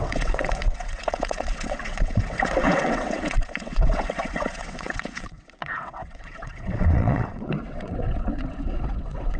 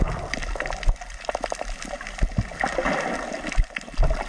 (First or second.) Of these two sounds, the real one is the second